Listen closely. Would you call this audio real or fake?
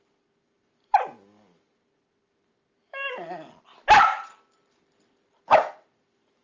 real